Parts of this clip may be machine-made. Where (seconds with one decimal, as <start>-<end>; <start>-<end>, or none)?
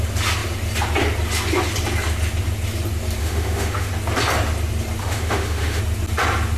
3.2-3.9; 5.0-5.8